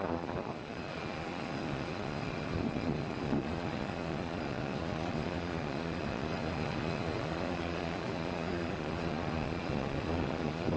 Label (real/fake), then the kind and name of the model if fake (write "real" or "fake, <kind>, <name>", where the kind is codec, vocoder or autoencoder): fake, vocoder, Vocos